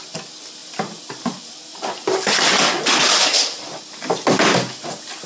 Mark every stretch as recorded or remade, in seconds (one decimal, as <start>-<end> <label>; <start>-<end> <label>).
0.0-0.6 recorded; 0.6-3.8 remade; 3.8-5.3 recorded